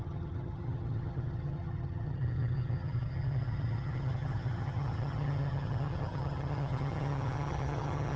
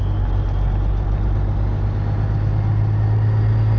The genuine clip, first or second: second